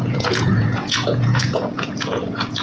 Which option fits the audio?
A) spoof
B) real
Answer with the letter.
A